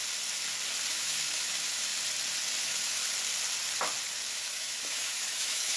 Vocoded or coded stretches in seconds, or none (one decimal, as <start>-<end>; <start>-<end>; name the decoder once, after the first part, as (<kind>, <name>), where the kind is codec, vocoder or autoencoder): 0.9-1.9 (autoencoder, DAC-VAE); 2.6-3.0; 4.3-5.8